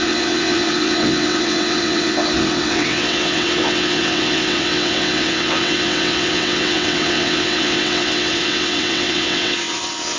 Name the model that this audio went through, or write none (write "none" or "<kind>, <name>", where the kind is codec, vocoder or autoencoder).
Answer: vocoder, WaveNeXt